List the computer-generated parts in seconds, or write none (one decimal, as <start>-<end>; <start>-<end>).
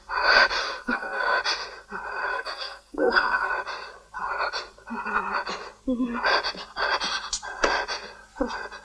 0.6-1.4; 2.3-3.5